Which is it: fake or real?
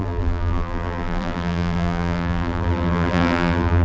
fake